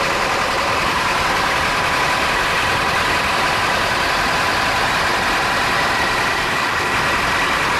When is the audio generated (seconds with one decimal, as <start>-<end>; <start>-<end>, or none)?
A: 6.3-6.9